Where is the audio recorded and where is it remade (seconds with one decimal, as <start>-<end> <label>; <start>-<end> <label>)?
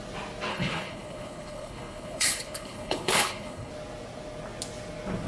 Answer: 0.0-0.5 recorded; 0.5-3.7 remade; 3.7-5.3 recorded